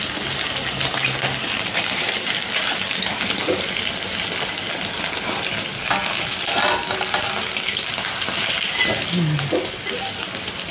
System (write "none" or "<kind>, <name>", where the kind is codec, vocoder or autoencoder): none